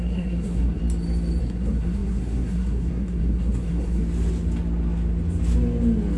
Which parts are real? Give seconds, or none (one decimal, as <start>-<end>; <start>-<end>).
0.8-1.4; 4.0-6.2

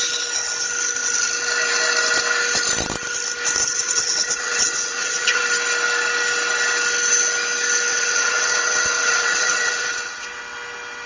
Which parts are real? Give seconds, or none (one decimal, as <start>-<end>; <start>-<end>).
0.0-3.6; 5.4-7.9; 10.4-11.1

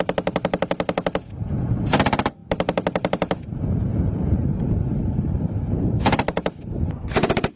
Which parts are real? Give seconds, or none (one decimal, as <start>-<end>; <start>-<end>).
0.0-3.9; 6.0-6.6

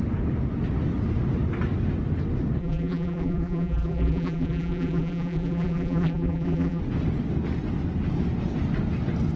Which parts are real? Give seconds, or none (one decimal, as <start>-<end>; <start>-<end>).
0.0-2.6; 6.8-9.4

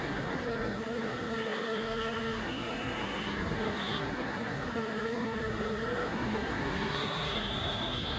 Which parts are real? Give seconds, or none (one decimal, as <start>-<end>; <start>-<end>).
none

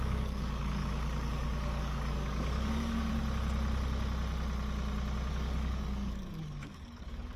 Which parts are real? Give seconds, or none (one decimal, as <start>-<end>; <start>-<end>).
3.1-5.3

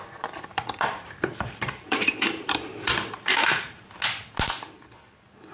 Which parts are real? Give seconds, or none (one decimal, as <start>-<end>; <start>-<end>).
0.0-0.5; 3.8-5.5

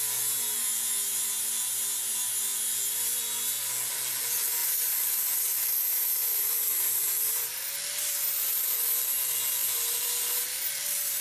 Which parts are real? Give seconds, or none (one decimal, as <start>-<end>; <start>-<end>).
0.0-4.6; 7.5-9.6